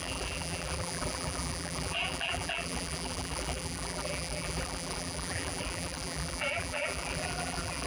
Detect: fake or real fake